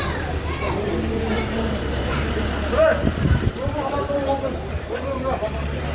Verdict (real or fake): fake